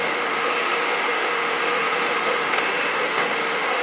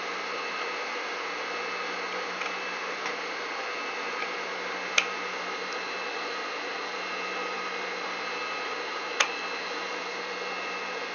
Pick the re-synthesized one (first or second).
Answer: first